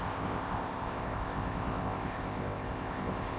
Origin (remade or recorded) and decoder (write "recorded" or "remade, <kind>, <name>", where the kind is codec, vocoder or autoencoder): remade, codec, ZipCodec